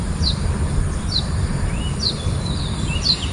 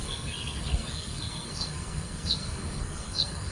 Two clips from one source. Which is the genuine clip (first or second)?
first